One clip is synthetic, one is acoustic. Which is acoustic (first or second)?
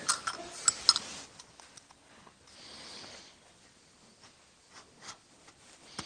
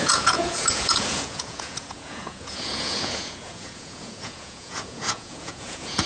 first